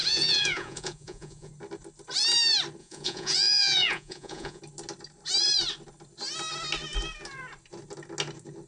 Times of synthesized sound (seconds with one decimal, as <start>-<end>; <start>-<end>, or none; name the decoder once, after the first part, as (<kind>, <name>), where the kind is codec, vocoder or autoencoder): 0.0-1.5 (vocoder, Vocos); 2.8-4.6